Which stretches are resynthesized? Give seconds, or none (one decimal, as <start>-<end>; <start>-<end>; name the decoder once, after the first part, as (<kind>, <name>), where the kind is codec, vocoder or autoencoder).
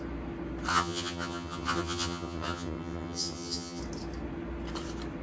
0.7-3.8 (vocoder, HiFi-GAN)